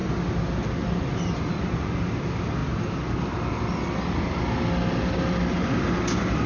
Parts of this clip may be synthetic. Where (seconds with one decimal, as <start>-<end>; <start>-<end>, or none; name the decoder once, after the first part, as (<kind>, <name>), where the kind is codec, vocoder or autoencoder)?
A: none